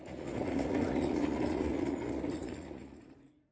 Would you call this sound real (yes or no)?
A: no